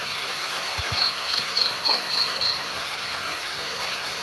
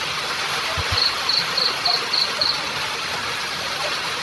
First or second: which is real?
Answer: second